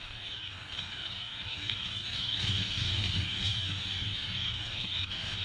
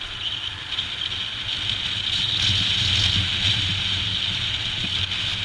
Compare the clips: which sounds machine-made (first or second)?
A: first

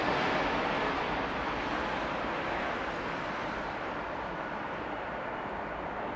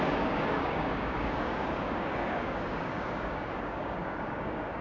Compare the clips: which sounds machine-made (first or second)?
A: second